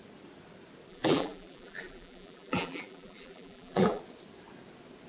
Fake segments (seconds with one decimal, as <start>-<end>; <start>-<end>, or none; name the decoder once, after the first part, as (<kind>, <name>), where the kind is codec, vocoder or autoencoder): 0.9-4.0 (vocoder, BigVGAN v2)